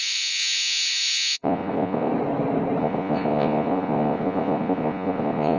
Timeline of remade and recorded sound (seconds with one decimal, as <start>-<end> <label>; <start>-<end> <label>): 0.0-2.1 remade; 2.1-2.8 recorded; 2.8-5.6 remade